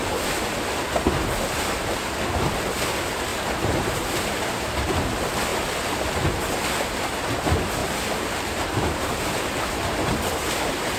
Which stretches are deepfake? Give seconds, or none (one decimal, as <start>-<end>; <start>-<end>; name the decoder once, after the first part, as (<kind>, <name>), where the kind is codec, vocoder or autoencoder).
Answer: 3.3-4.6 (vocoder, BigVGAN v2); 7.8-9.5